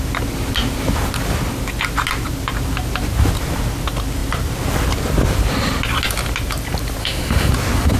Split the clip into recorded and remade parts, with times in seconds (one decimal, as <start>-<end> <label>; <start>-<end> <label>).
0.0-7.0 recorded; 7.0-7.5 remade; 7.5-8.0 recorded